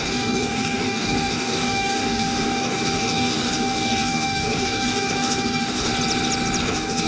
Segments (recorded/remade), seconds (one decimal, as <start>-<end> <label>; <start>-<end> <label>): 0.0-5.9 remade; 5.9-6.6 recorded; 6.6-7.1 remade